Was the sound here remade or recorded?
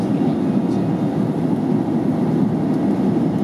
recorded